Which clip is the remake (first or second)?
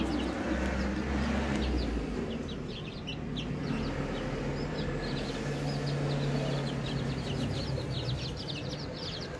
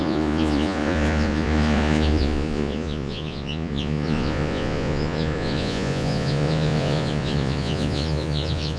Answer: second